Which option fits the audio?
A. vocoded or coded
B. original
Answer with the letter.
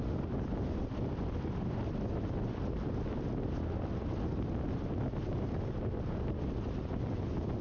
B